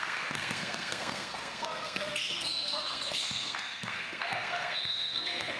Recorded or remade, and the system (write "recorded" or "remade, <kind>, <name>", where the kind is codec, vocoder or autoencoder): remade, codec, SNAC